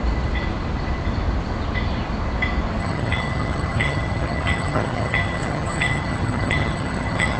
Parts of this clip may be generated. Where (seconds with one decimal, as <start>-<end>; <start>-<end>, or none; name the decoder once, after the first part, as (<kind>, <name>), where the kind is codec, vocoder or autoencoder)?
2.8-7.4 (vocoder, HiFi-GAN)

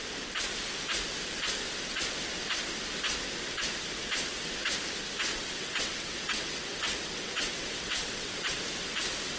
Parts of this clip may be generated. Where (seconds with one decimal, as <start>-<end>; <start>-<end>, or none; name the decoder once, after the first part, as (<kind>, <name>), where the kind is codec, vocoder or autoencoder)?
5.3-8.5 (vocoder, WaveNeXt)

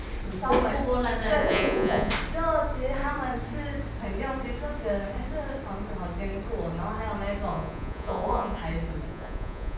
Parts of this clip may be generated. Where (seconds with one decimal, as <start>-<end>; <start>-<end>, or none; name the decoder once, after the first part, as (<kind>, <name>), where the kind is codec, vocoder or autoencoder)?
1.4-2.1 (vocoder, Vocos); 7.5-8.6; 9.1-9.8